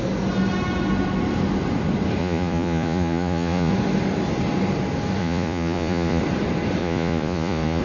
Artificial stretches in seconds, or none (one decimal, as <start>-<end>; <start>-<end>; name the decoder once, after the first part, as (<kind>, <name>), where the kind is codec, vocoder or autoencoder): 2.2-3.7 (vocoder, Vocos); 5.2-6.2; 6.8-7.8